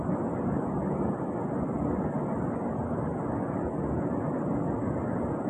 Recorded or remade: recorded